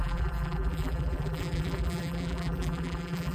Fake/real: fake